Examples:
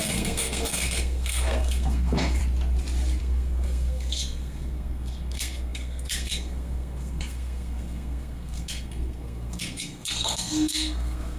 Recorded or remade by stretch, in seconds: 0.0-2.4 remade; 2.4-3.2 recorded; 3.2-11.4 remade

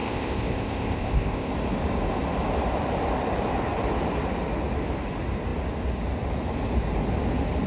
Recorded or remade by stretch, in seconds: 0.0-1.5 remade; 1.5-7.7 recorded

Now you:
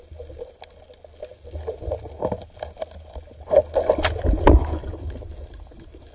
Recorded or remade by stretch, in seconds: 0.0-6.1 recorded

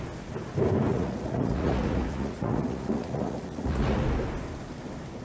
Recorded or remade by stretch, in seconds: 0.0-0.9 recorded; 0.9-4.0 remade; 4.0-5.2 recorded

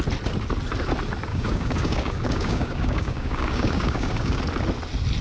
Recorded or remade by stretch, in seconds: 0.0-1.3 recorded; 1.3-4.4 remade; 4.4-5.2 recorded

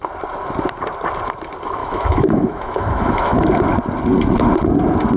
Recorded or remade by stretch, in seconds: 0.0-1.8 recorded; 1.8-3.5 remade; 3.5-5.2 recorded

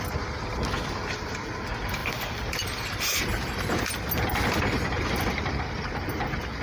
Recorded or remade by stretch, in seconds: 0.0-2.0 recorded; 2.0-3.2 remade; 3.2-6.6 recorded

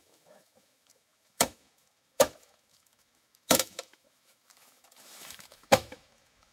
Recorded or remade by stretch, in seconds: 0.0-6.5 remade